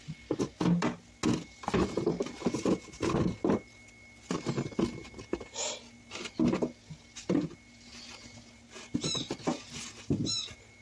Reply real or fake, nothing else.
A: real